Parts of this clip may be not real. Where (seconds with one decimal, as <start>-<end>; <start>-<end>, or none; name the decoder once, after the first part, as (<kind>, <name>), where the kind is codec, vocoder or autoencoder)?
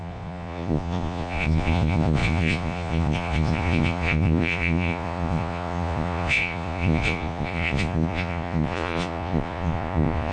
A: 0.0-10.3 (vocoder, Vocos)